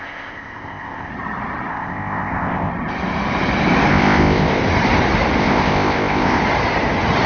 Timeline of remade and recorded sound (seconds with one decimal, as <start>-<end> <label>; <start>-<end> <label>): 0.0-1.1 remade; 1.1-1.7 recorded; 1.7-2.7 remade; 2.7-3.9 recorded; 3.9-4.6 remade; 4.6-5.4 recorded; 5.4-6.4 remade; 6.4-7.3 recorded